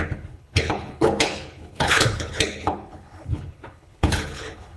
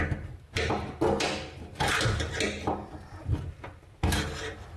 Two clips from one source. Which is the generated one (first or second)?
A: first